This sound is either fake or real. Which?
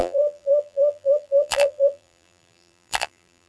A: fake